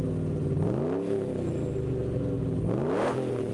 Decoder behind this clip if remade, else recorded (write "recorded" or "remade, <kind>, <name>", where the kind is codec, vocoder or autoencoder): recorded